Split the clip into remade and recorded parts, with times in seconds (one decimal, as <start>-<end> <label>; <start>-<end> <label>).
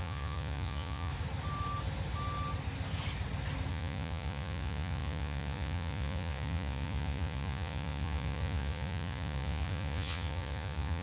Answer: 0.0-1.1 remade; 1.1-3.7 recorded; 3.7-11.0 remade